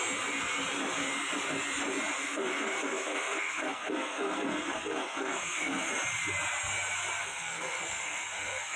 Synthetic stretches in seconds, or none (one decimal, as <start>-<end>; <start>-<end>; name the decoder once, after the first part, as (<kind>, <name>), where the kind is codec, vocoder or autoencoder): 2.2-5.9 (codec, SNAC); 7.2-8.8